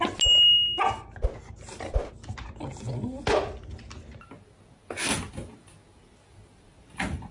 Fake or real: real